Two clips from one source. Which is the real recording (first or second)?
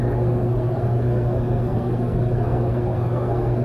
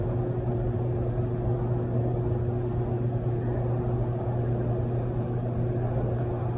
second